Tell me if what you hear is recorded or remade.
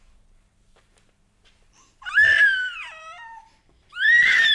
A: remade